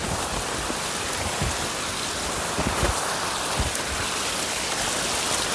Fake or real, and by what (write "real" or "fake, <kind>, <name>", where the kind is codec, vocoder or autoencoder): real